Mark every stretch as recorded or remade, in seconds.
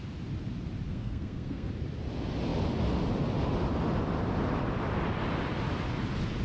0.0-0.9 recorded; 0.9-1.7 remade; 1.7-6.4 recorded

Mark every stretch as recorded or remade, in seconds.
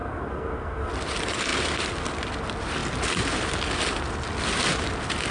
0.0-0.9 remade; 0.9-5.3 recorded